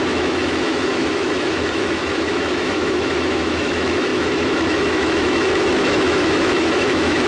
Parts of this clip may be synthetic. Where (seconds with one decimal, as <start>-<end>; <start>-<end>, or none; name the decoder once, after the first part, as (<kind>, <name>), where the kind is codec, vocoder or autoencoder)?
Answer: 0.0-7.3 (autoencoder, DAC-VAE)